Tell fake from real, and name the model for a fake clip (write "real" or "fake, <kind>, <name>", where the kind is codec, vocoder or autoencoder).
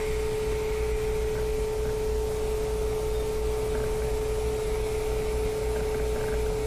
real